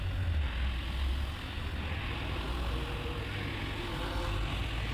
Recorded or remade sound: recorded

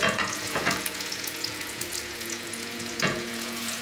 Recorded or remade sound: remade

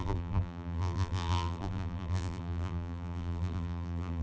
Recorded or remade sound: remade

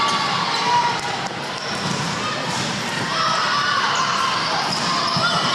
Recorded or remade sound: recorded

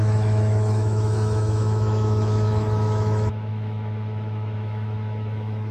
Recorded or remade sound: remade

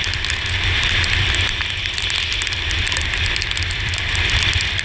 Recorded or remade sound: remade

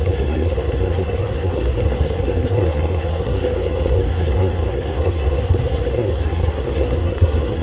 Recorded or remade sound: remade